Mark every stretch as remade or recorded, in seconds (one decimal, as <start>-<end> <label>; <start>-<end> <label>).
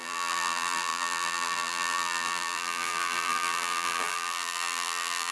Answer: 0.0-5.3 remade